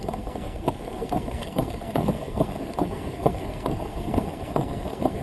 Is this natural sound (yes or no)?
no